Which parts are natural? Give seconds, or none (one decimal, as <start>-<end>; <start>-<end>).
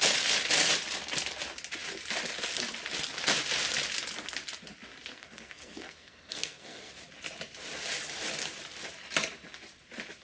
0.0-5.1; 6.9-10.2